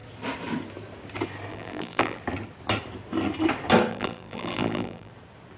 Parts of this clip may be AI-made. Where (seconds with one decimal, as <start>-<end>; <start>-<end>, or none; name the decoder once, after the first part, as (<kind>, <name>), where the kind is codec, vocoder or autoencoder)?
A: 1.5-2.2 (vocoder, BigVGAN v2); 3.9-5.1